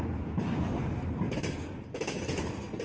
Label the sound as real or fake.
real